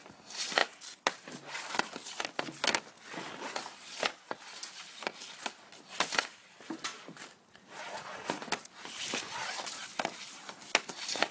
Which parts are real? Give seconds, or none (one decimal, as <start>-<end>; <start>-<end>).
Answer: 0.0-11.3